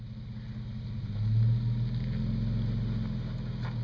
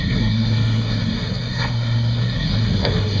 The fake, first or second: second